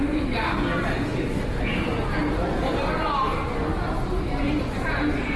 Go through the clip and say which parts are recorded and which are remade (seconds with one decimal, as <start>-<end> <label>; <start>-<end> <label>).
0.0-5.4 recorded